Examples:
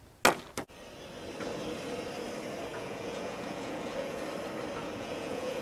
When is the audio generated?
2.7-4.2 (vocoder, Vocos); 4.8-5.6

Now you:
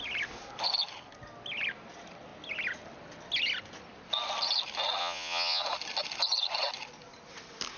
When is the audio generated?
5.0-5.6 (vocoder, Vocos)

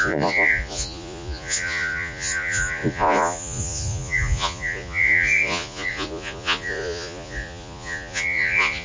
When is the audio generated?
0.0-8.8 (vocoder, Vocos)

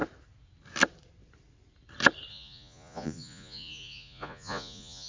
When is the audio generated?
2.3-5.1 (vocoder, Vocos)

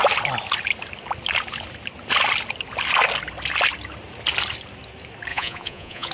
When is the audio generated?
5.3-6.1 (vocoder, Vocos)

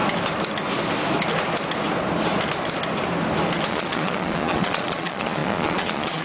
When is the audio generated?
3.7-6.2 (vocoder, Vocos)

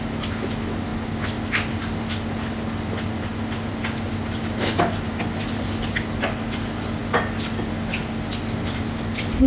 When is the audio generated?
none